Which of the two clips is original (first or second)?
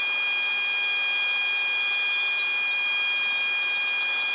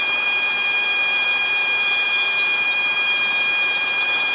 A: first